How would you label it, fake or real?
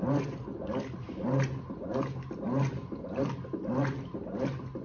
real